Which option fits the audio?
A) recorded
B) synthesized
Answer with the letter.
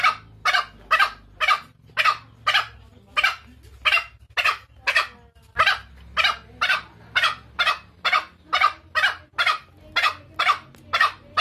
A